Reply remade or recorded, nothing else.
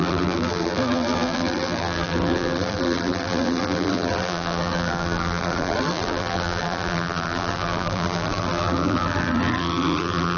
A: remade